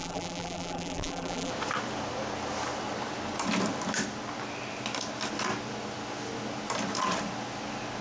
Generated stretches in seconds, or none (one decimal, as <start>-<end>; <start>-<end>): 0.0-1.5